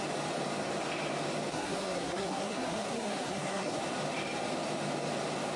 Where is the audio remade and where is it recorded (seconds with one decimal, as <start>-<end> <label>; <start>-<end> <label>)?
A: 0.0-1.5 recorded; 1.5-3.8 remade; 3.8-5.6 recorded